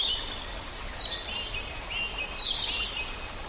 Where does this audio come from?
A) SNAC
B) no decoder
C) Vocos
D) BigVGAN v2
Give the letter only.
B